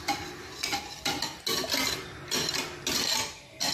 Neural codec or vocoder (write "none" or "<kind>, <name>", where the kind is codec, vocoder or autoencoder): none